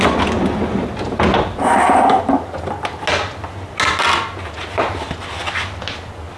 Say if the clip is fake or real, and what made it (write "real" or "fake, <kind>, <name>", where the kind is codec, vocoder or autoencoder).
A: real